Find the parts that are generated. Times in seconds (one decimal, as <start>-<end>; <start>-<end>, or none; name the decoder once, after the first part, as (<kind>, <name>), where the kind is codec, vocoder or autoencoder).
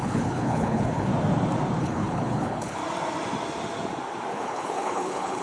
0.0-1.1 (codec, HILCodec); 1.8-2.8; 4.3-5.4